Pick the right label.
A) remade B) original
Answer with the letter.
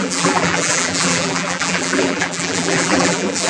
A